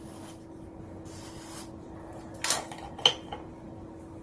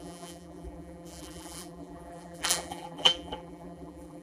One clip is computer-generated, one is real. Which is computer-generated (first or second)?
second